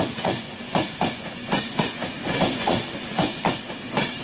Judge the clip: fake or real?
fake